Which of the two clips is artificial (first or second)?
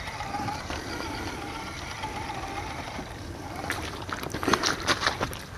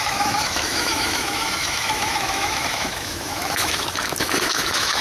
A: second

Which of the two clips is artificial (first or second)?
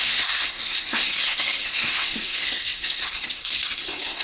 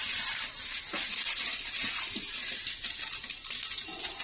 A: first